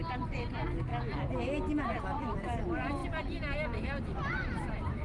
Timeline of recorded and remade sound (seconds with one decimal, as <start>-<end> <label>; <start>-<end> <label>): 0.0-0.9 remade; 0.9-2.0 recorded; 2.0-3.0 remade; 3.0-4.3 recorded; 4.3-5.0 remade